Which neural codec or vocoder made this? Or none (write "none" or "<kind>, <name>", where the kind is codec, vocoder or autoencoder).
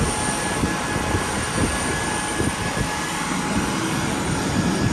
none